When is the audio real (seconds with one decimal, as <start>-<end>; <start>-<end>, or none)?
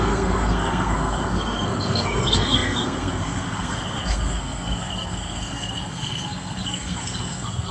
none